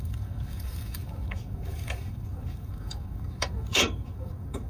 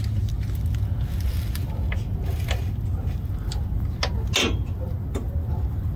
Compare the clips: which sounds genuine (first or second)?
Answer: second